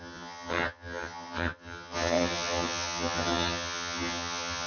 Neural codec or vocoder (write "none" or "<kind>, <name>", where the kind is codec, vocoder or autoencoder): vocoder, HiFi-GAN